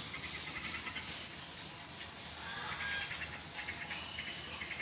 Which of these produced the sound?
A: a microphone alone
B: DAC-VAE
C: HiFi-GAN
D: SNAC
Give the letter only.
A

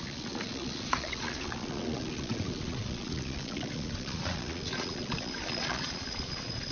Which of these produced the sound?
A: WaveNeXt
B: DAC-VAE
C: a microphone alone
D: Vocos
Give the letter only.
D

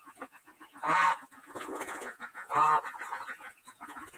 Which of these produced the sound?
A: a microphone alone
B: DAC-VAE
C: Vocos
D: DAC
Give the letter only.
C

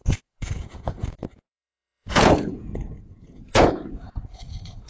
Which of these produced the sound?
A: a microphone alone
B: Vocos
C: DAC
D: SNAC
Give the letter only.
B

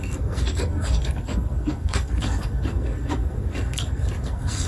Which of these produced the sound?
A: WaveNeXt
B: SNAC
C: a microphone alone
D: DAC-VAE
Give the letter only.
B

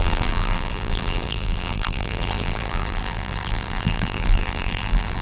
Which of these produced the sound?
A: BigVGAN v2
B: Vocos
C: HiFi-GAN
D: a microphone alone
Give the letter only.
A